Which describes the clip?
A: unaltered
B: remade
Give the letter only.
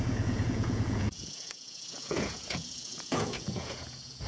B